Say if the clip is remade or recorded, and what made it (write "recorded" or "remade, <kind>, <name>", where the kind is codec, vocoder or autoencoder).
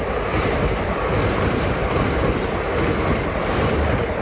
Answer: recorded